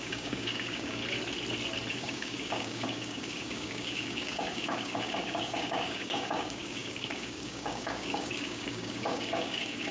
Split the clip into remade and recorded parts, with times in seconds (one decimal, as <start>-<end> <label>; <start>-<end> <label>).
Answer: 0.0-1.0 remade; 1.0-1.9 recorded; 1.9-9.9 remade